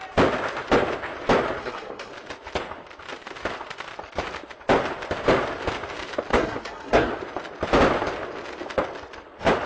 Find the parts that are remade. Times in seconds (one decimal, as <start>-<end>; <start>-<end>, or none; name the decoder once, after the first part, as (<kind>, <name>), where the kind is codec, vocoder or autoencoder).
1.6-2.1 (codec, SNAC); 6.3-7.1